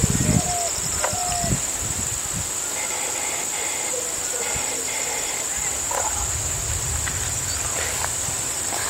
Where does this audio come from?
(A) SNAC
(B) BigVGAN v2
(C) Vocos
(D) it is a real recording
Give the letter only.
B